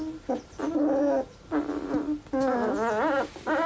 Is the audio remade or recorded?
recorded